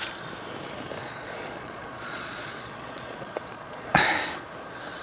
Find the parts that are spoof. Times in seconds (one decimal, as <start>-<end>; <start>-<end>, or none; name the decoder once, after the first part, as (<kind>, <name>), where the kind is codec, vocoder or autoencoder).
1.0-4.0 (vocoder, Vocos)